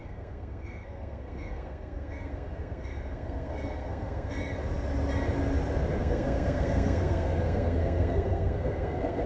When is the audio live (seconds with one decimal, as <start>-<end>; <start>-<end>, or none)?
4.4-6.0